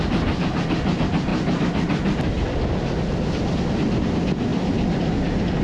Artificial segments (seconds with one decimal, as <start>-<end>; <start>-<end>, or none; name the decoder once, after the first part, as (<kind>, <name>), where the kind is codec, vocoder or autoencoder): 4.5-5.1 (vocoder, BigVGAN v2)